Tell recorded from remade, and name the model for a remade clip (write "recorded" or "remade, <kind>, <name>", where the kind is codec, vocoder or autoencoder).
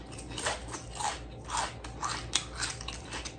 recorded